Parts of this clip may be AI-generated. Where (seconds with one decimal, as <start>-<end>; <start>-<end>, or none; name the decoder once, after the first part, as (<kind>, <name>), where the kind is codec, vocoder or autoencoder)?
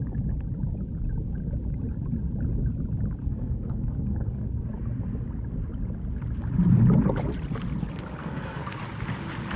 3.2-4.6 (codec, SNAC); 8.2-8.8